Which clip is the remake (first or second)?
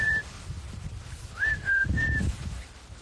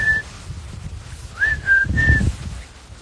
first